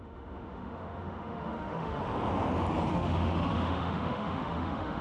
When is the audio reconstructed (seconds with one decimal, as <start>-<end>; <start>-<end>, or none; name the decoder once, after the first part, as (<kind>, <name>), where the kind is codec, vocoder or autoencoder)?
0.0-2.0 (autoencoder, DAC-VAE); 2.9-5.0